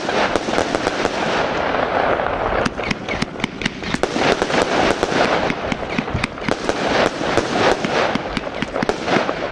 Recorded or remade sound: recorded